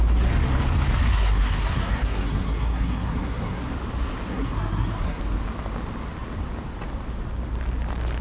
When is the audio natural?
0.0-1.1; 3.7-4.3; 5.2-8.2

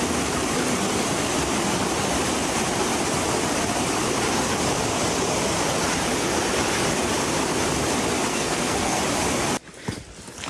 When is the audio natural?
0.0-8.3; 9.0-10.5

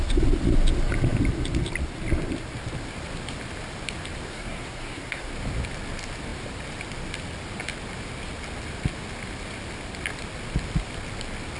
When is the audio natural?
0.0-4.3; 5.3-11.6

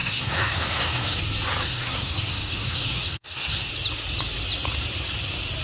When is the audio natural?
1.2-1.6; 3.7-5.6